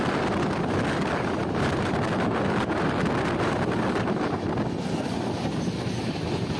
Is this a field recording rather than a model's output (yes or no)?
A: yes